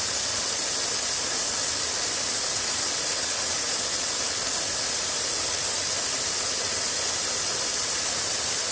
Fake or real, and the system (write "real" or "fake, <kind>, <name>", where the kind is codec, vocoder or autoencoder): real